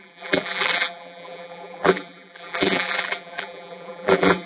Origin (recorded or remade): remade